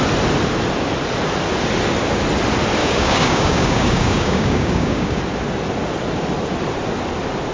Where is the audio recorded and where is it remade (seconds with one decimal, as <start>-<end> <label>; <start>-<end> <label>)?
0.0-2.8 recorded; 2.8-5.2 remade; 5.2-7.5 recorded

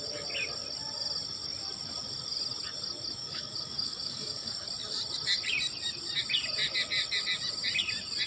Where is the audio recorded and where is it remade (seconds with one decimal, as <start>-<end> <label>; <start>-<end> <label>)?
0.0-3.2 recorded; 3.2-4.5 remade; 4.5-8.3 recorded